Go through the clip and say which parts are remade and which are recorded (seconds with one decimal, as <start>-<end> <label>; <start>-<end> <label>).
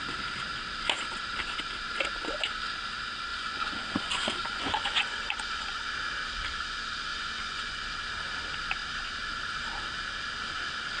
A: 0.0-3.3 recorded; 3.3-5.8 remade; 5.8-7.1 recorded; 7.1-7.9 remade; 7.9-11.0 recorded